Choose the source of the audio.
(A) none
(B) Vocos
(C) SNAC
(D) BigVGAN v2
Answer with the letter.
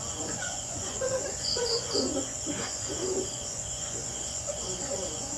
B